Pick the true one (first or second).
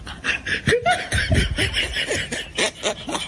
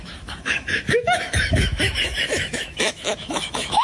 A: first